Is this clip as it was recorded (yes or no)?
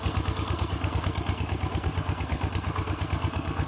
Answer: no